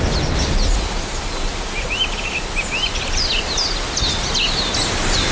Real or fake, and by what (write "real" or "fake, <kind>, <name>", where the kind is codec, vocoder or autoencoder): real